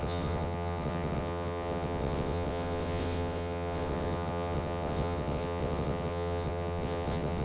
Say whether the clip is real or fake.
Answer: fake